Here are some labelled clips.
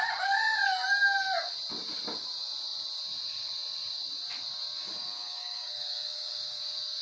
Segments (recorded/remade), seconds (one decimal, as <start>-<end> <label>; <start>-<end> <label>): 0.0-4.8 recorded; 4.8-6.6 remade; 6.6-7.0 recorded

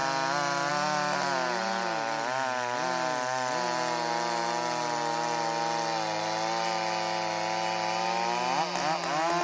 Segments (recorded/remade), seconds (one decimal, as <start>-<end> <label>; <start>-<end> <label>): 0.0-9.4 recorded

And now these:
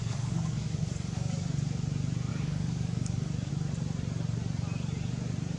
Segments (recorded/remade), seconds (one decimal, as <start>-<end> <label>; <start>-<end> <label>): 0.0-1.3 remade; 1.3-2.3 recorded; 2.3-3.5 remade; 3.5-5.6 recorded